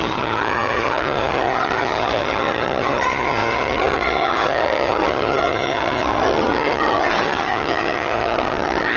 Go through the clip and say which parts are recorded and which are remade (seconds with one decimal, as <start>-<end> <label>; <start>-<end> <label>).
0.0-9.0 remade